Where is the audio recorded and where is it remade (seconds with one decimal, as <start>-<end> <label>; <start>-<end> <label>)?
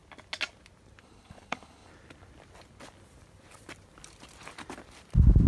0.0-1.0 recorded; 1.0-1.9 remade; 1.9-5.5 recorded